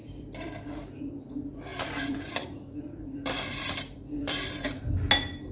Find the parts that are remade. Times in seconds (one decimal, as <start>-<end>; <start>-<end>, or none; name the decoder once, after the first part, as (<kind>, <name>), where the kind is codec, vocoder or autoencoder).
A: 0.0-1.0 (vocoder, BigVGAN v2); 1.7-4.5